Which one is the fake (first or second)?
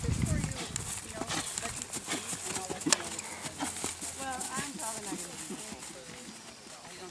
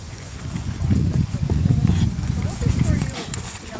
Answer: second